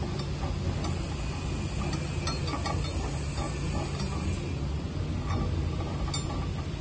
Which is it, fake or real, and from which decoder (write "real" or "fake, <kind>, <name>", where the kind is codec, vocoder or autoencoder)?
real